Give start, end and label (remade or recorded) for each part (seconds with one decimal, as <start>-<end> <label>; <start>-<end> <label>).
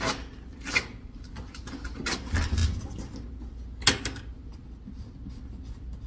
0.0-6.1 recorded